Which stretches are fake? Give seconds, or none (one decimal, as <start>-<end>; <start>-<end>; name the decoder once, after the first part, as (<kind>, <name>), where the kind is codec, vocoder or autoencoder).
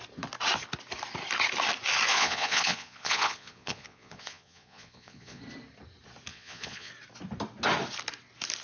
2.1-5.4 (vocoder, Vocos); 6.3-6.9